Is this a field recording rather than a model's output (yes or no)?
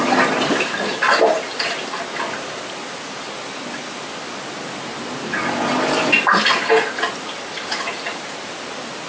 yes